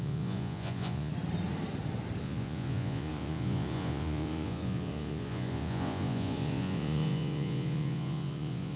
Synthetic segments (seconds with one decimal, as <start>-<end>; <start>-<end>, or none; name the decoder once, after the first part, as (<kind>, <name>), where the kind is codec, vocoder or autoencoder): 0.0-1.1 (vocoder, Vocos); 2.2-8.8